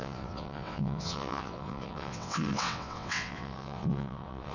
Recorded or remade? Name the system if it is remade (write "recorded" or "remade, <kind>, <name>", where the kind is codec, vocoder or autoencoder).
remade, vocoder, WaveNeXt